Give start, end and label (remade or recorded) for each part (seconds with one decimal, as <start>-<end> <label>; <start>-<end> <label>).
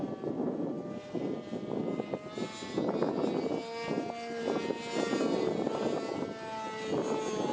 0.0-7.5 recorded